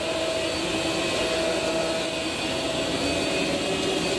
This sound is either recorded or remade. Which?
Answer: recorded